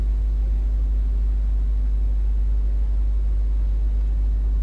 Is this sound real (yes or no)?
yes